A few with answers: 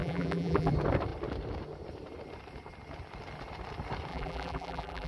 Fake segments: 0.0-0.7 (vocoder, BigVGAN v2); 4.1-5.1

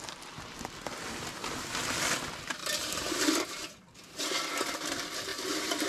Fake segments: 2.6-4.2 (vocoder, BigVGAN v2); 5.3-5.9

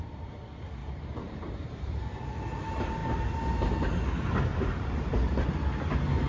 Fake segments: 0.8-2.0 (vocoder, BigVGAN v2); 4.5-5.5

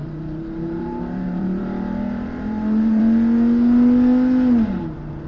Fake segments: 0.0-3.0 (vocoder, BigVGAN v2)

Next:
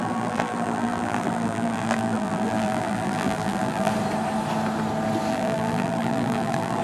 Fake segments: 0.0-3.9 (vocoder, BigVGAN v2); 5.3-6.8

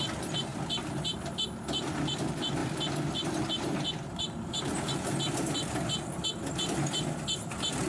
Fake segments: 0.5-1.2 (vocoder, BigVGAN v2); 2.6-4.9

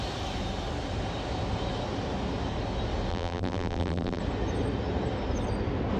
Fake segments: 3.1-4.2 (vocoder, BigVGAN v2)